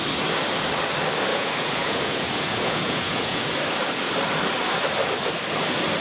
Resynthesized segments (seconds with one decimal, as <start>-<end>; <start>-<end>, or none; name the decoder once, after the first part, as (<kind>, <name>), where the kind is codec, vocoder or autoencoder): 1.3-3.4 (vocoder, Vocos)